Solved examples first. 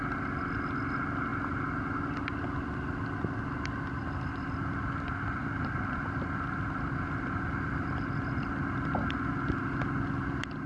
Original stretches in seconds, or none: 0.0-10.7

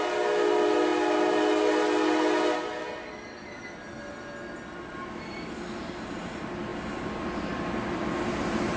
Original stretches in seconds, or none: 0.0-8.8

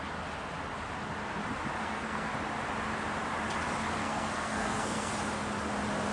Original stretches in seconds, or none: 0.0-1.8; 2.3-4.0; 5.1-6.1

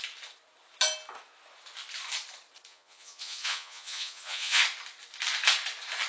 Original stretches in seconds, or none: 0.0-2.7; 4.6-6.1

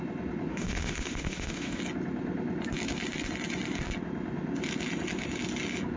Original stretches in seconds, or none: 0.0-0.5; 1.8-6.0